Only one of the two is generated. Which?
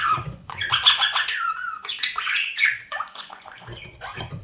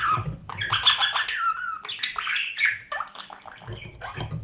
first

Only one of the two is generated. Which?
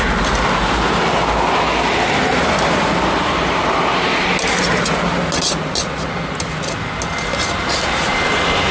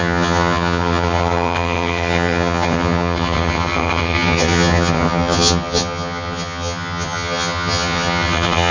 second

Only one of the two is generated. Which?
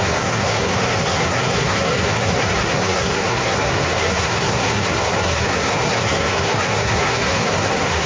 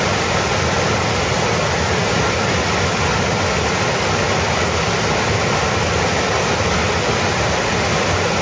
first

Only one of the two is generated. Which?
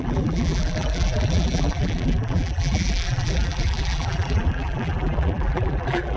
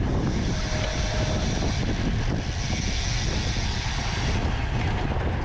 first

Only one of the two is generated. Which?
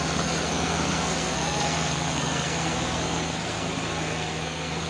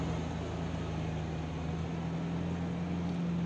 first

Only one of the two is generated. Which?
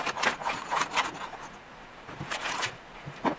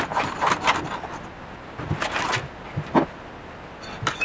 first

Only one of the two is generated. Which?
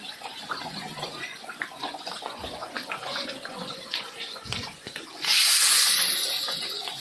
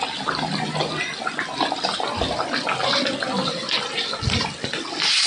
first